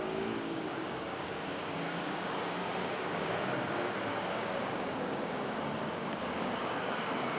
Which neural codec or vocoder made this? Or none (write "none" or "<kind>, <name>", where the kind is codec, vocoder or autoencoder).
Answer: codec, DAC